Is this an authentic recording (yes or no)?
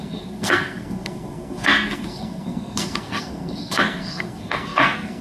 no